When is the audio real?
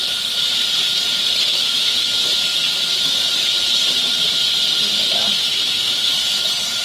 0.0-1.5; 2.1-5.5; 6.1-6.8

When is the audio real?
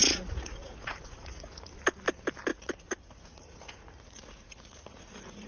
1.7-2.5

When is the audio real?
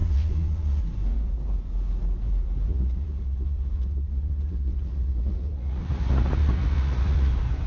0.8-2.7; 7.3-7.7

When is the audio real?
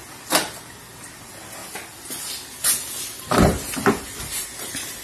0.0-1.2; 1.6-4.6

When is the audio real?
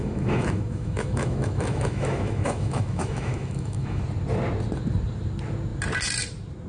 4.0-6.7